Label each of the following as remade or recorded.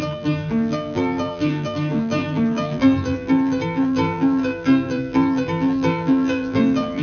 remade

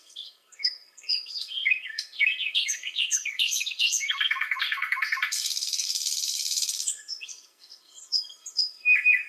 remade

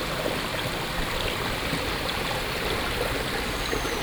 recorded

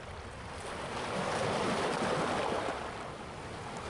recorded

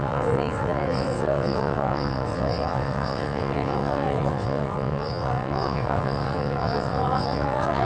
remade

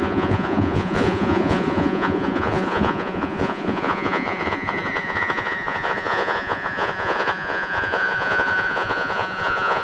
remade